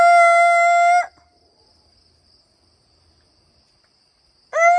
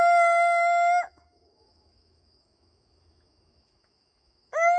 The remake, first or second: second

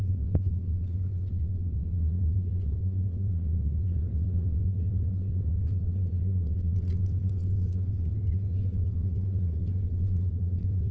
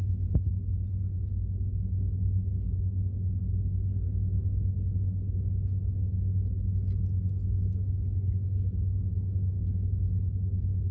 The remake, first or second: first